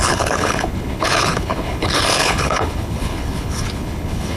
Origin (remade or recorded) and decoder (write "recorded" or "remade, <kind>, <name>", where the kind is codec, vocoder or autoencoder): remade, codec, HILCodec